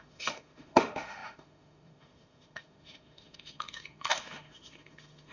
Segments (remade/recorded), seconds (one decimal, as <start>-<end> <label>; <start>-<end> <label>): 0.0-5.3 remade